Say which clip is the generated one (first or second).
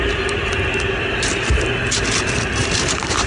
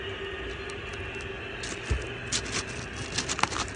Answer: first